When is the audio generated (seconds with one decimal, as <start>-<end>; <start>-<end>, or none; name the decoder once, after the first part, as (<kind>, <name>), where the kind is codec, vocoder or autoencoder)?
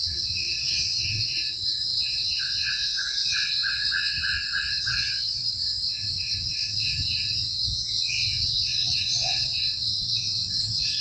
0.0-7.3 (vocoder, WaveNeXt); 8.1-11.0